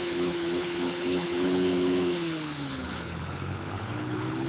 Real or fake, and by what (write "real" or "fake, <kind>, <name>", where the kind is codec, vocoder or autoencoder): fake, codec, HILCodec